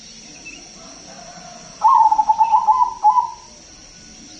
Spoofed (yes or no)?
no